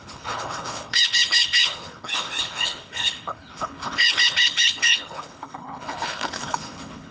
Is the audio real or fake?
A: fake